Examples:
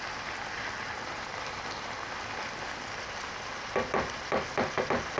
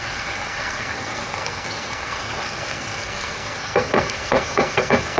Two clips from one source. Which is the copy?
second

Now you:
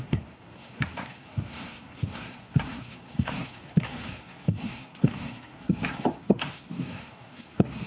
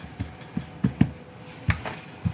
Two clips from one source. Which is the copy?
first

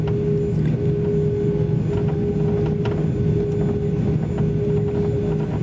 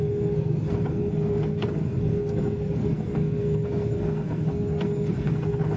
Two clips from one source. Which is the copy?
second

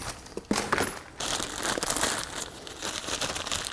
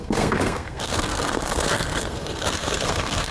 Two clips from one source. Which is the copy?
second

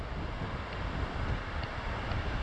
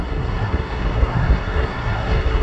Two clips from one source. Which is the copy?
second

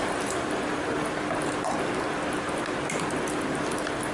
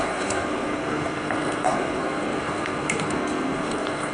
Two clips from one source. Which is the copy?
second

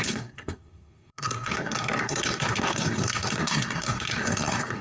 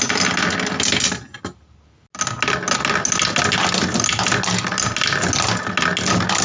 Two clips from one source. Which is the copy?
first